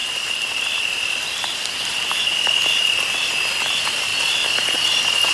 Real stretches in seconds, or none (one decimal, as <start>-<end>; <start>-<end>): 1.1-5.3